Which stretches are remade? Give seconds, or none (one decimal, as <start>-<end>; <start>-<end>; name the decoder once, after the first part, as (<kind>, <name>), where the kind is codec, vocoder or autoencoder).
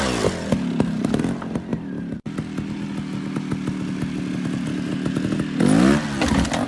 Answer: none